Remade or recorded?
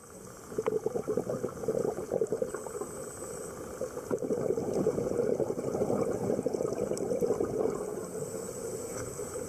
recorded